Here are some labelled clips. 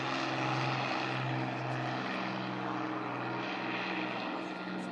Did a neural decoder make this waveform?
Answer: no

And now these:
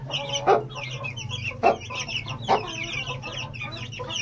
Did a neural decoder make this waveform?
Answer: no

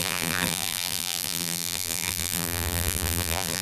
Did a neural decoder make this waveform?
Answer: yes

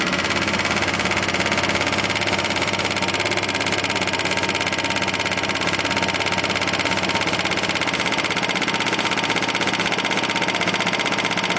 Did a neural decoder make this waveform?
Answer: no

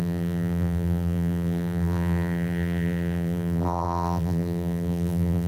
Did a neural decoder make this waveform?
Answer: yes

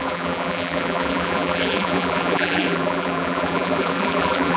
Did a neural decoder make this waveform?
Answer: yes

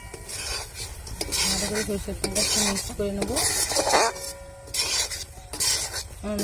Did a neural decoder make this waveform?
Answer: no